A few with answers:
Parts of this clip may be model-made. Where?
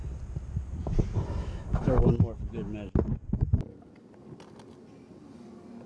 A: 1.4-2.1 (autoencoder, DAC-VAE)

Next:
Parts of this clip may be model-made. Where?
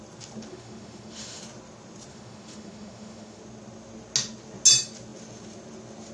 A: 0.5-1.4 (autoencoder, DAC-VAE); 2.1-3.4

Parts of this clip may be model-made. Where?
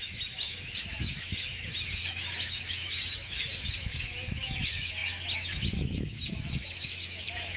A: 0.0-7.6 (autoencoder, DAC-VAE)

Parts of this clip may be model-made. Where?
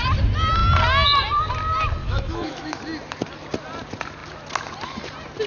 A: 2.0-2.8 (autoencoder, DAC-VAE)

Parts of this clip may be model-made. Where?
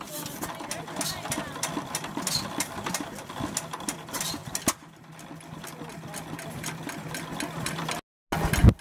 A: none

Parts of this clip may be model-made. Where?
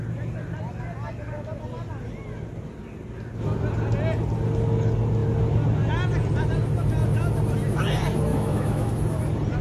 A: 8.3-8.9 (autoencoder, DAC-VAE)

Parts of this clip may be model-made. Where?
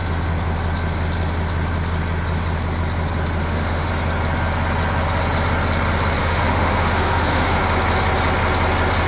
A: 3.4-3.9 (autoencoder, DAC-VAE); 6.2-7.6